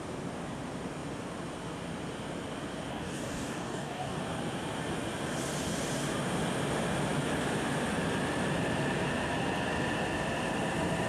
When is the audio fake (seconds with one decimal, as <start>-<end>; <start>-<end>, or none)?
2.9-4.2